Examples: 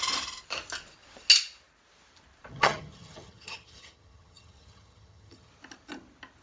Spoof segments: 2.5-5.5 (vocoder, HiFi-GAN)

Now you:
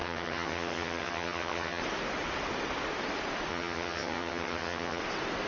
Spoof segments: 0.0-1.8 (vocoder, HiFi-GAN); 3.5-5.0

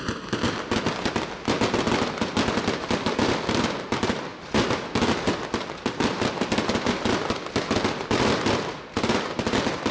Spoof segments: none

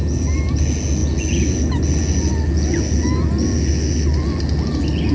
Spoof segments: none

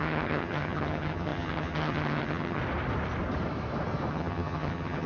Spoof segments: 0.0-2.6 (vocoder, HiFi-GAN); 4.1-5.1